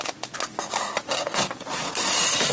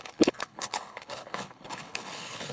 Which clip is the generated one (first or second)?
second